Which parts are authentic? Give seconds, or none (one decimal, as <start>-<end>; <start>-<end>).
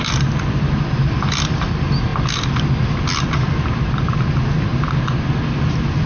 0.0-6.1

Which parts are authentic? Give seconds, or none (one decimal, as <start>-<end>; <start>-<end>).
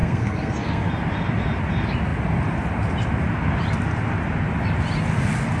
0.9-5.6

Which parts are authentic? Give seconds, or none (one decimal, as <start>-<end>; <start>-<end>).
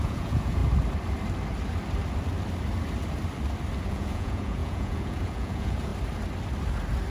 0.6-3.8; 5.9-7.1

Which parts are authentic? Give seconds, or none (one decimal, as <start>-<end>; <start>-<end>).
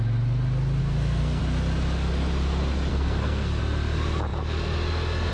0.0-0.8; 1.4-2.9; 3.6-5.3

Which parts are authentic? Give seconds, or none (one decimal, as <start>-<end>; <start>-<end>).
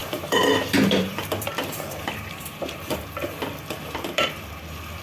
3.0-5.0